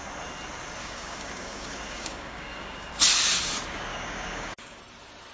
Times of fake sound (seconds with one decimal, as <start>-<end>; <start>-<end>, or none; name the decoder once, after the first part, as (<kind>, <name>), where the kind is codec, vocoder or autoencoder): 0.8-2.9 (codec, DAC); 3.9-4.8